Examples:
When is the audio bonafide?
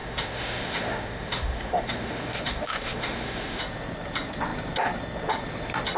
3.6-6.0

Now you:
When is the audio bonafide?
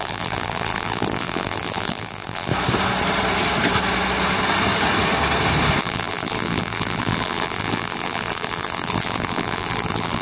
2.5-5.8